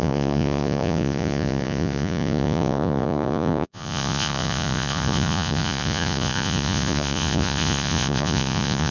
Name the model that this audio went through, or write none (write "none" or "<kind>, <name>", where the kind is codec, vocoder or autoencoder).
vocoder, Vocos